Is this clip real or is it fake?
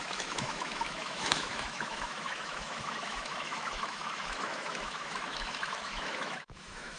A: fake